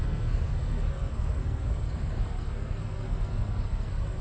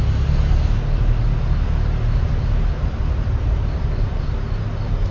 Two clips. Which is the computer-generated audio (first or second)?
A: first